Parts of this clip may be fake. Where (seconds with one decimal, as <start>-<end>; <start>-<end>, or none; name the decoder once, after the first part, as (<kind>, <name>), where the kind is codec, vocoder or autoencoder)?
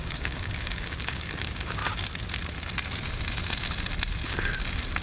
0.0-1.8 (codec, DAC)